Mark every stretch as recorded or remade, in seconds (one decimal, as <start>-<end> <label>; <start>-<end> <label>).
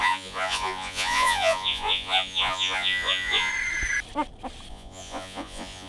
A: 0.0-3.5 remade; 3.5-4.7 recorded; 4.7-5.9 remade